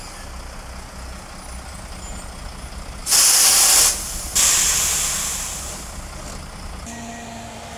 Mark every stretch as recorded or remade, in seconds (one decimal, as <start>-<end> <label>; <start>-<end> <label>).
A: 0.0-7.8 recorded